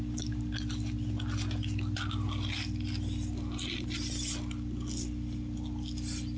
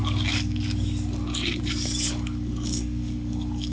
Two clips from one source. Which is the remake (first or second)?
second